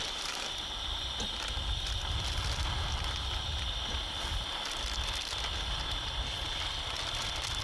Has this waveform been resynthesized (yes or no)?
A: no